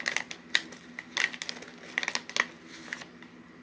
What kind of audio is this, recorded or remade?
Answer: recorded